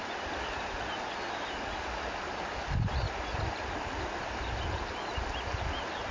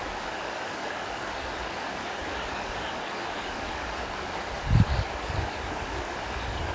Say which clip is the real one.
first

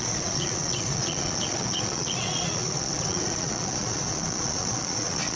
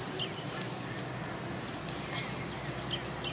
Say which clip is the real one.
second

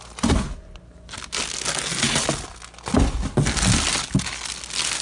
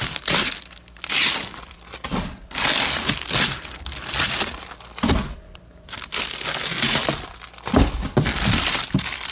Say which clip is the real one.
first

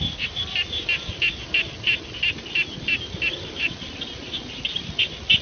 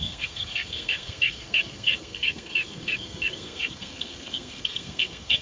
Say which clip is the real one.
first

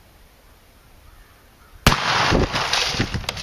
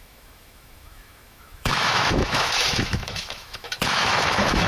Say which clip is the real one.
first